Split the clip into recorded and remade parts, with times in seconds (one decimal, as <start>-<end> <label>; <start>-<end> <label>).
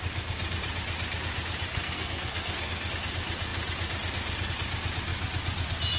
0.0-1.7 recorded; 1.7-2.9 remade; 2.9-6.0 recorded